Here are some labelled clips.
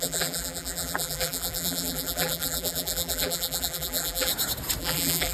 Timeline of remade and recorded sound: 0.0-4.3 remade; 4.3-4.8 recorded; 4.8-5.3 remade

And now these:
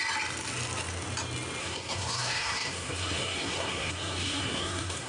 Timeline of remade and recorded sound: 0.0-1.6 recorded; 1.6-5.1 remade

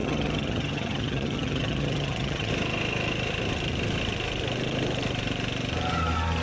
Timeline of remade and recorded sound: 0.0-2.5 remade; 2.5-6.4 recorded

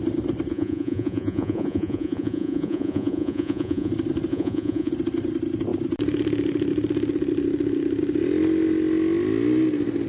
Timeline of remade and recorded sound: 0.0-0.5 recorded; 0.5-3.9 remade; 3.9-4.3 recorded; 4.3-4.9 remade; 4.9-10.1 recorded